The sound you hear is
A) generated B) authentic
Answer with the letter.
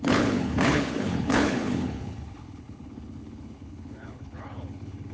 A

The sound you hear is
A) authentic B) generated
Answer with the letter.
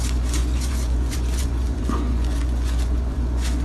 B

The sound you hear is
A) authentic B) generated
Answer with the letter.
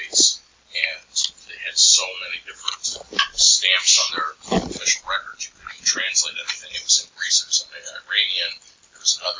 A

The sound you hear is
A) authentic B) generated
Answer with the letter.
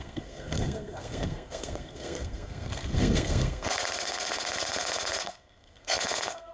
B